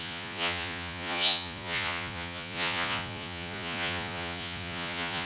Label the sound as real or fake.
fake